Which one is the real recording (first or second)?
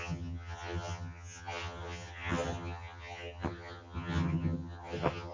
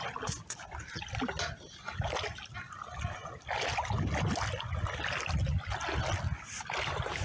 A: second